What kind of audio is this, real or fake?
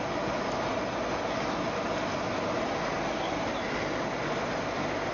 real